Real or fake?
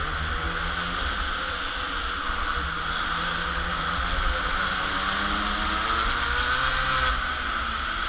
real